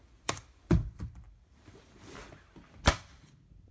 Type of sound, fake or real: fake